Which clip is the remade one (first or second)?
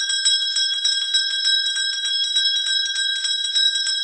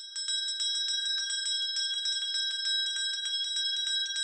first